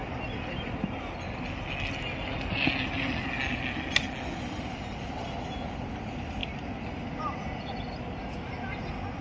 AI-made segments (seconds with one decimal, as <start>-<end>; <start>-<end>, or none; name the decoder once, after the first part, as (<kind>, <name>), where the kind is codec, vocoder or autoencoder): none

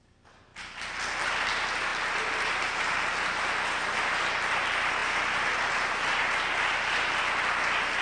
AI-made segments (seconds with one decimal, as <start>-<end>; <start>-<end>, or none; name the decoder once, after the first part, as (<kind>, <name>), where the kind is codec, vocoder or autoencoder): none